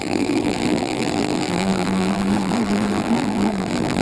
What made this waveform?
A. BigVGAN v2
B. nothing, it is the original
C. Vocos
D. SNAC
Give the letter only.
A